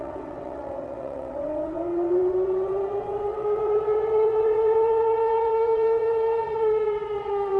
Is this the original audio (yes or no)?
no